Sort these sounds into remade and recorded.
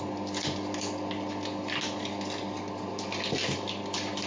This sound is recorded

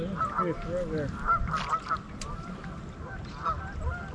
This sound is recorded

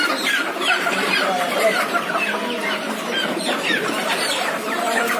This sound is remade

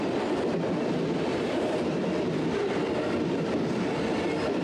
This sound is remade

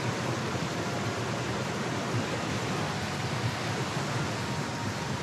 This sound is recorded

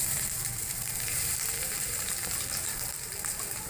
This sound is remade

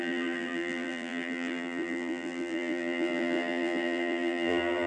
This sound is remade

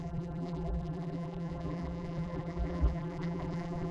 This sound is remade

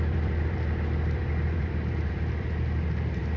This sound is remade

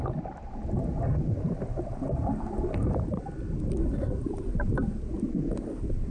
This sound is recorded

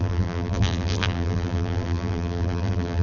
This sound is remade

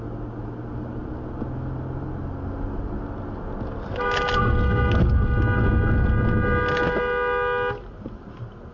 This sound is recorded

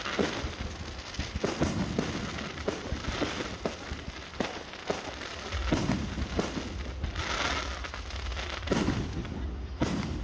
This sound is recorded